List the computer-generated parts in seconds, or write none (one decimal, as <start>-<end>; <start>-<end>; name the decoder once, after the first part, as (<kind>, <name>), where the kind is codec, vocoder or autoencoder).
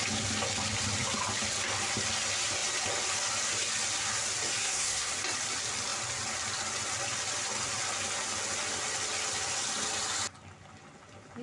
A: 4.6-5.1 (codec, SNAC)